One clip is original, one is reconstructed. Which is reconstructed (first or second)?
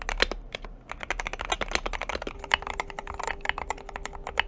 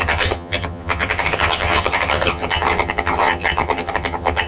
second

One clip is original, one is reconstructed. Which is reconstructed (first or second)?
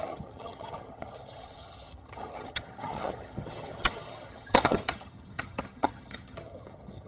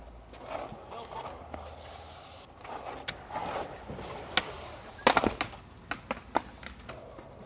first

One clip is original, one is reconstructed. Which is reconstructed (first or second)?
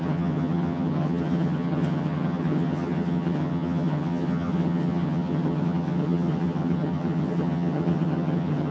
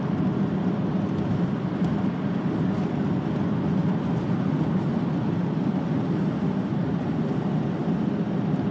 first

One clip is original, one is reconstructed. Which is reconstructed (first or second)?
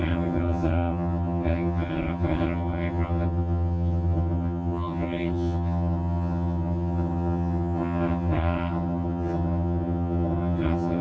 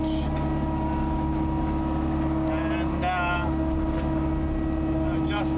first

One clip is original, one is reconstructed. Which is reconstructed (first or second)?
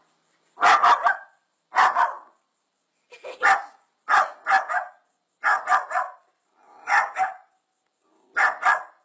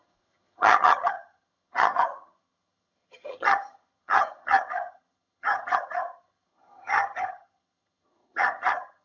second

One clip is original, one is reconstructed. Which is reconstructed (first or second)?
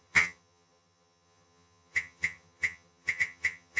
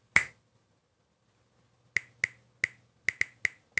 first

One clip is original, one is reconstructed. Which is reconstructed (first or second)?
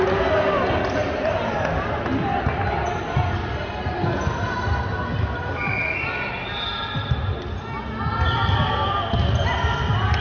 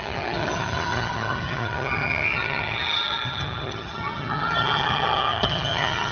second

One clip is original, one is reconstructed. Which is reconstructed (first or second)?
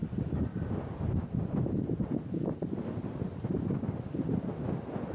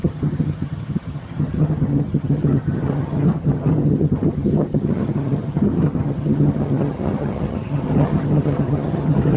second